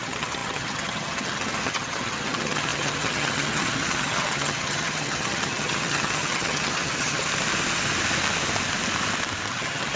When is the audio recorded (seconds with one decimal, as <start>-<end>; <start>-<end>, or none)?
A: 7.3-9.5